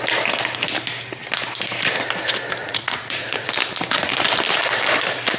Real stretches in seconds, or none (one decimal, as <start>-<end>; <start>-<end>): 0.0-2.6; 3.5-5.4